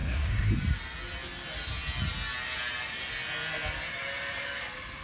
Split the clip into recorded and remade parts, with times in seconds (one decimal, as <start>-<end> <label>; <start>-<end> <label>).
0.0-0.5 remade; 0.5-5.0 recorded

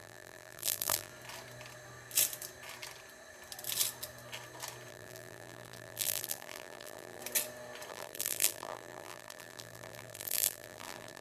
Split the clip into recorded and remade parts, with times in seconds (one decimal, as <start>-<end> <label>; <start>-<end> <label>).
0.0-1.1 remade; 1.1-4.9 recorded; 4.9-7.2 remade; 7.2-7.9 recorded; 7.9-11.2 remade

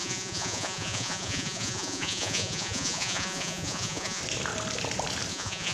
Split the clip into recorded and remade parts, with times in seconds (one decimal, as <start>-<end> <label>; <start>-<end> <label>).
0.0-4.2 remade; 4.2-5.3 recorded; 5.3-5.7 remade

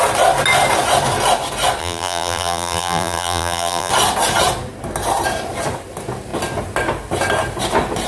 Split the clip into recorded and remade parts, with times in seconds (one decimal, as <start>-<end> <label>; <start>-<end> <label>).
0.0-1.8 recorded; 1.8-3.9 remade; 3.9-8.1 recorded

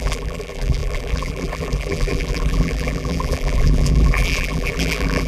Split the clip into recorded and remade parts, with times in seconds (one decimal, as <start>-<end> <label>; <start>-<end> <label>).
0.0-5.3 remade

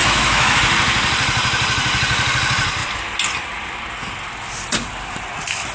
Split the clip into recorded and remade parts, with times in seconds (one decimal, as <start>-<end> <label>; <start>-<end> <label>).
0.0-0.6 remade; 0.6-5.7 recorded

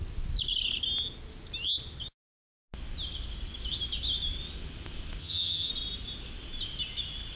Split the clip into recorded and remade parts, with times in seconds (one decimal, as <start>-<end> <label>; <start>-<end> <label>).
0.0-5.2 recorded; 5.2-5.7 remade; 5.7-7.4 recorded

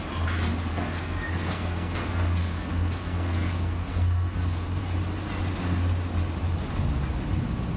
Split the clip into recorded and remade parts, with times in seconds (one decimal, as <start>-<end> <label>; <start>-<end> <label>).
0.0-0.7 recorded; 0.7-4.8 remade; 4.8-7.8 recorded